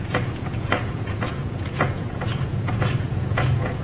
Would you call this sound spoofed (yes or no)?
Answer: yes